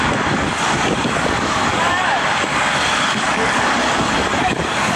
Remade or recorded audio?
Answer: remade